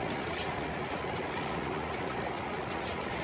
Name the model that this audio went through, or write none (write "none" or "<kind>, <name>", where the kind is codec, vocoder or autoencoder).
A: vocoder, Vocos